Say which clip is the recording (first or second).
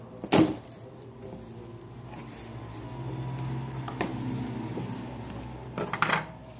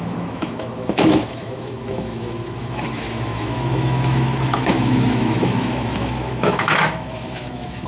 first